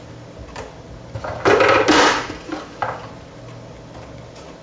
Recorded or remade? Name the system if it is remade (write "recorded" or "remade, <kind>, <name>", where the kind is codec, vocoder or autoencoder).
recorded